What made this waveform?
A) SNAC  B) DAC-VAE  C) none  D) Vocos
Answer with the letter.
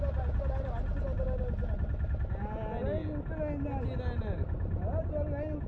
C